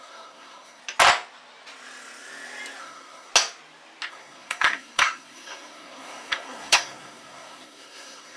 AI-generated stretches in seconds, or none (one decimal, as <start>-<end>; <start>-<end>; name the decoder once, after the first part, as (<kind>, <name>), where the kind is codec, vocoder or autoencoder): 0.0-0.8 (codec, SNAC); 2.8-3.3; 4.1-8.4